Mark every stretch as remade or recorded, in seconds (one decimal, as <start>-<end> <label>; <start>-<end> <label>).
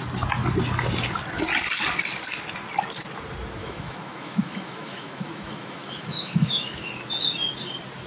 0.0-3.6 recorded; 3.6-6.9 remade; 6.9-8.1 recorded